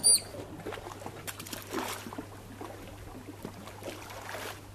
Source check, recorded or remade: recorded